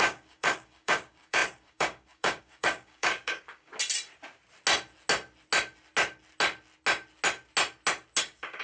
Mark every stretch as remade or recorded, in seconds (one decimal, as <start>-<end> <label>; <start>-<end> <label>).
0.0-3.7 remade; 3.7-8.2 recorded; 8.2-8.6 remade